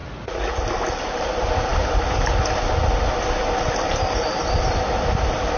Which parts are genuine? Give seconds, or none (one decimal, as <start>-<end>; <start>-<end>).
0.6-5.6